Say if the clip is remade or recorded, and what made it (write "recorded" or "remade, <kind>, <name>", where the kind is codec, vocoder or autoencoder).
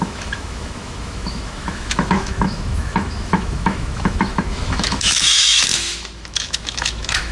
remade, autoencoder, DAC-VAE